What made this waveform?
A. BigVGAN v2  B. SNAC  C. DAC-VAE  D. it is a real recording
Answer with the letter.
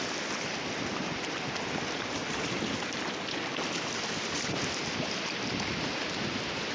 A